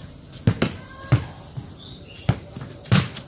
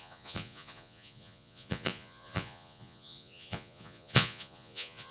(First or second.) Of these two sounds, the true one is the first